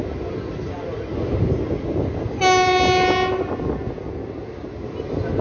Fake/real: real